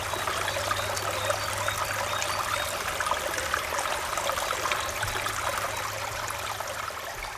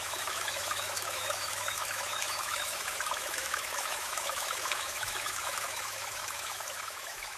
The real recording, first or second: first